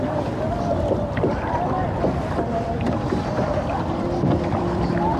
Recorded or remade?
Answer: remade